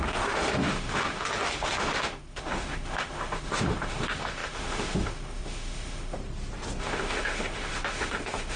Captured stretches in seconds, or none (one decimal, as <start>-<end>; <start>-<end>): 6.2-6.8